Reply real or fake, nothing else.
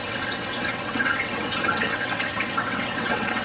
fake